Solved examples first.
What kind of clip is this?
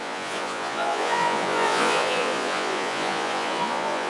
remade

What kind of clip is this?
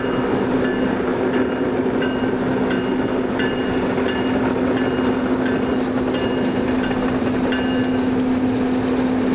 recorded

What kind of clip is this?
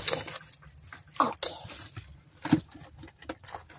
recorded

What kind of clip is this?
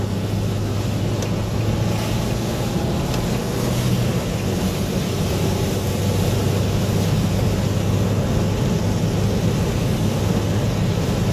recorded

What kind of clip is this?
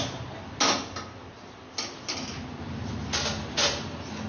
recorded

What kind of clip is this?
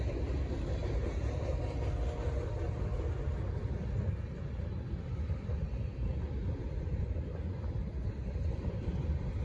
recorded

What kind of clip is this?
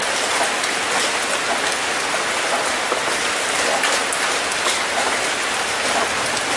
recorded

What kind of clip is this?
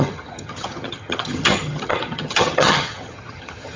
remade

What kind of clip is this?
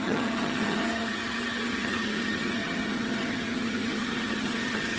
remade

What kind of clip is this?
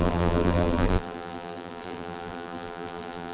remade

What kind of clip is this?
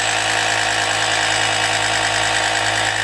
recorded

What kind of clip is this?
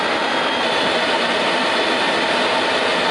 recorded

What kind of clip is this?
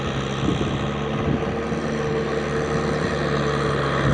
recorded